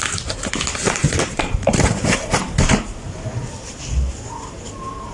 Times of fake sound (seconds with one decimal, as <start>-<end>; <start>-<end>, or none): 0.7-3.8